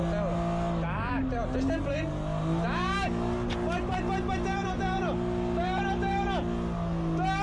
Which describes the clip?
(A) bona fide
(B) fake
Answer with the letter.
A